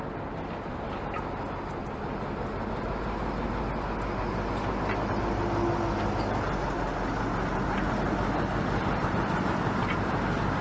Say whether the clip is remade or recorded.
recorded